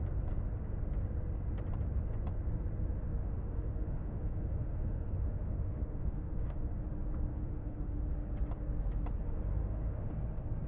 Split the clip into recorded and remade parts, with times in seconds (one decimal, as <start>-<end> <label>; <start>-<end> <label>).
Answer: 0.0-3.1 recorded; 3.1-6.8 remade; 6.8-7.3 recorded; 7.3-8.0 remade; 8.0-9.6 recorded; 9.6-10.1 remade; 10.1-10.7 recorded